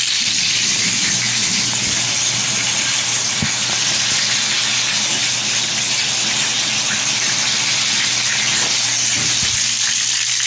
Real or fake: real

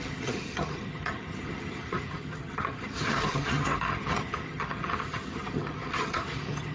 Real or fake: fake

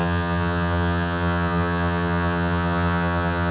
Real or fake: fake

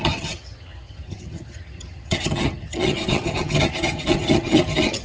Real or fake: fake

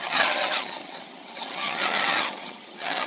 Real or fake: fake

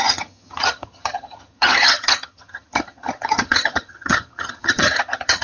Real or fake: fake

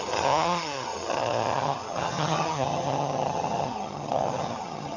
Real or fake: fake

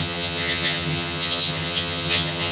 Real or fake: fake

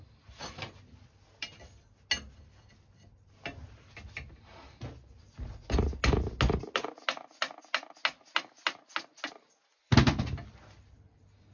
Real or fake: real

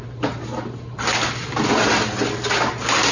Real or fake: real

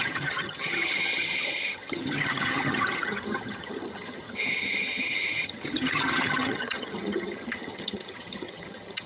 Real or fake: fake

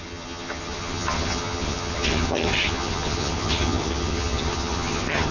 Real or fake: fake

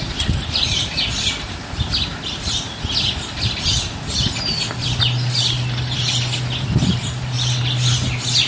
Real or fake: real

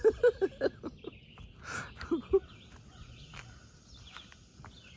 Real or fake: real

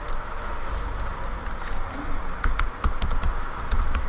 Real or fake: real